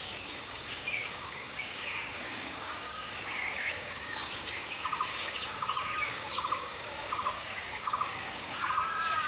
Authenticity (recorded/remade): remade